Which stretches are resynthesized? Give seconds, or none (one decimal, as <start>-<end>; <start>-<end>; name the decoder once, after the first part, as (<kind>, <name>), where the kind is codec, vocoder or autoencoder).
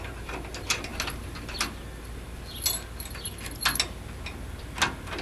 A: none